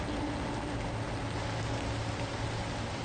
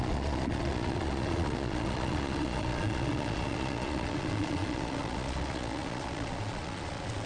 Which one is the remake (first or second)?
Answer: second